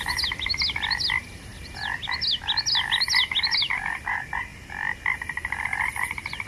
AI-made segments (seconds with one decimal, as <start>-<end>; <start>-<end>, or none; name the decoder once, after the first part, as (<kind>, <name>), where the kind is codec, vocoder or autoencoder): none